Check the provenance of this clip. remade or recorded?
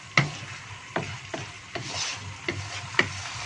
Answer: recorded